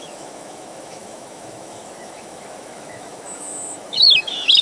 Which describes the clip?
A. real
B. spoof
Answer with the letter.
B